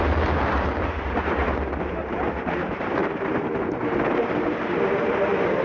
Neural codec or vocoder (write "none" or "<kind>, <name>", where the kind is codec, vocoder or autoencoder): vocoder, BigVGAN v2